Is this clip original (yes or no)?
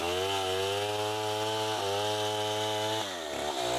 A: yes